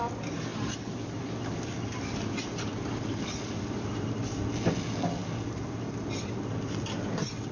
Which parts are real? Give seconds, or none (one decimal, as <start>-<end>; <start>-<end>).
0.0-7.5